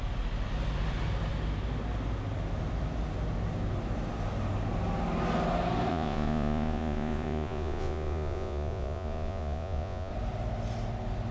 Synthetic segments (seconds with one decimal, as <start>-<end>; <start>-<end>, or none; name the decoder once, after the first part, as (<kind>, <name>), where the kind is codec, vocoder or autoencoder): 5.9-10.1 (vocoder, Vocos)